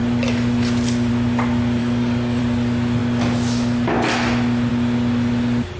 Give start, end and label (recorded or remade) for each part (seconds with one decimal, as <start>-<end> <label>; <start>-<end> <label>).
0.0-1.8 recorded; 1.8-2.4 remade; 2.4-5.8 recorded